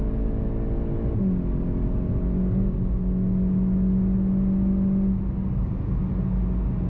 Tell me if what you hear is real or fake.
real